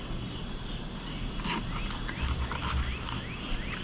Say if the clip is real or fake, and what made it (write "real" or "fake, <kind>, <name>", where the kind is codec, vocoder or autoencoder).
real